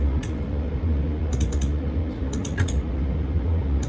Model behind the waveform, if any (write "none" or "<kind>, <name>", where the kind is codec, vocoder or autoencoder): vocoder, Vocos